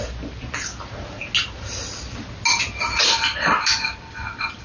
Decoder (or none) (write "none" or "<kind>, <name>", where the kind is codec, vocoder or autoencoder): none